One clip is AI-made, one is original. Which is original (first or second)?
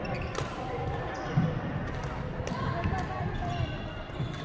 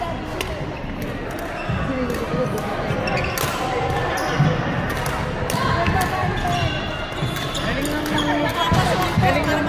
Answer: second